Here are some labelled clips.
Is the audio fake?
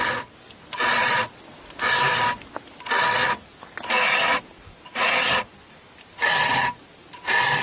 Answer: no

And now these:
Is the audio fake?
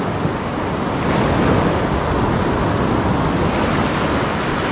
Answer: no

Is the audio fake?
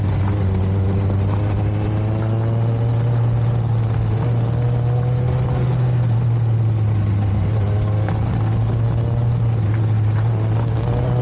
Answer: no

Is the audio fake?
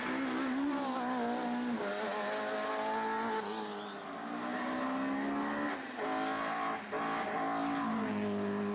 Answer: no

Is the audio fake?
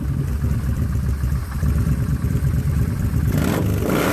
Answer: yes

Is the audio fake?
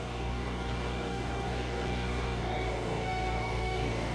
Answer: yes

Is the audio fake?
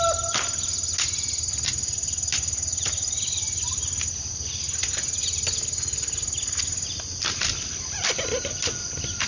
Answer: no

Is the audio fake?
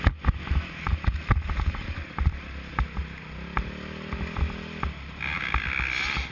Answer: no